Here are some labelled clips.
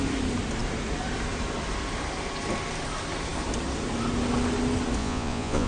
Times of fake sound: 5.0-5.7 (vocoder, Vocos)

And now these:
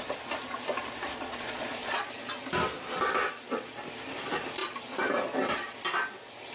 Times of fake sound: 1.1-2.0 (vocoder, Vocos)

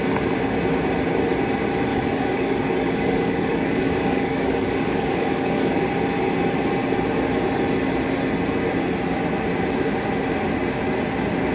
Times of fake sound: 1.9-5.9 (codec, DAC)

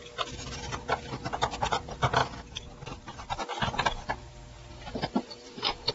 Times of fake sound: 4.7-5.9 (vocoder, BigVGAN v2)

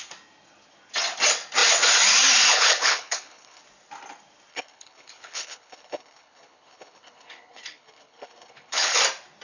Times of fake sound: 2.5-3.6 (codec, HILCodec); 4.5-9.0

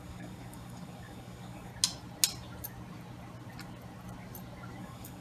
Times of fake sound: 0.0-1.7 (codec, DAC); 4.8-5.2

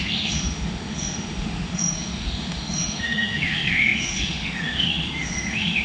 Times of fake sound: 0.0-5.8 (autoencoder, DAC-VAE)

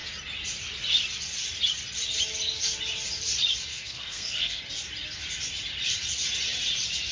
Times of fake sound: 3.7-4.6 (codec, SNAC)